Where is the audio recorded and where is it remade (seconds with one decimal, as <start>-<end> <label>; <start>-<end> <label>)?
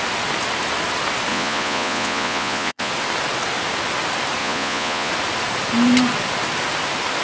0.0-1.3 recorded; 1.3-2.9 remade; 2.9-4.4 recorded; 4.4-5.1 remade; 5.1-7.2 recorded